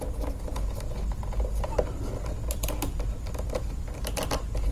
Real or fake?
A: real